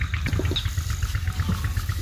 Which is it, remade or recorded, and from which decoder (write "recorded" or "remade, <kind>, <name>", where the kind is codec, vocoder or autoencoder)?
recorded